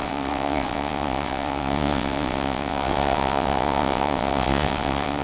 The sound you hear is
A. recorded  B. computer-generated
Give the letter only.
B